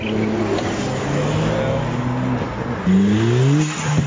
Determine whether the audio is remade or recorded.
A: recorded